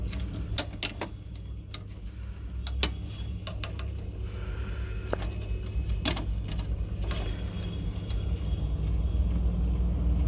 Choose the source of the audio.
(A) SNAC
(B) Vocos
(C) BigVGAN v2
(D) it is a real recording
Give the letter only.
D